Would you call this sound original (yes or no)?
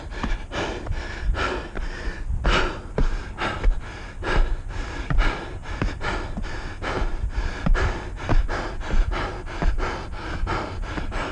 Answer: yes